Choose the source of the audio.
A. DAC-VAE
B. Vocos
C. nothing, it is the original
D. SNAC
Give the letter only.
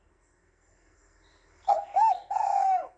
D